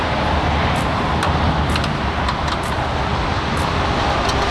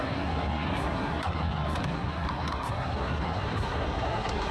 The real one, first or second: first